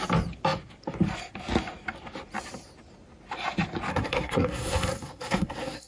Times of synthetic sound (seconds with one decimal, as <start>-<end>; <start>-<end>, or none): 3.9-5.9